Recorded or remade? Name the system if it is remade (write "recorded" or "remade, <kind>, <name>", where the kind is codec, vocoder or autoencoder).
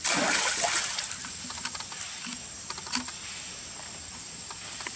recorded